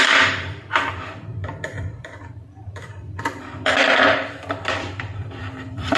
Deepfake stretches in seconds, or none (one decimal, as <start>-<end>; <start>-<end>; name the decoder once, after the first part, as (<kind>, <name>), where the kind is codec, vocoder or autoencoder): 0.0-6.0 (vocoder, BigVGAN v2)